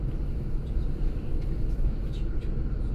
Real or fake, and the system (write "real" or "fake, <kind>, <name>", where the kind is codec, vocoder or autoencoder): real